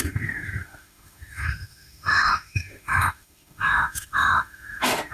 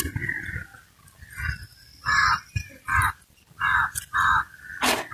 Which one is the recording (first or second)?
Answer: second